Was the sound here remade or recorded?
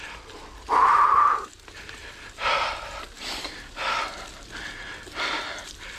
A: recorded